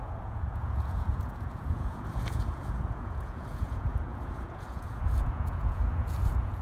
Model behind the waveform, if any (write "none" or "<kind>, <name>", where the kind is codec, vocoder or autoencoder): vocoder, Vocos